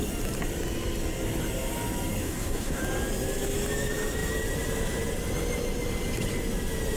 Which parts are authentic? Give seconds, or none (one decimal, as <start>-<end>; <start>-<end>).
0.0-2.2; 2.8-7.0